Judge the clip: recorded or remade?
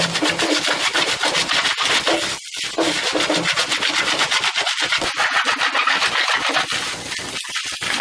recorded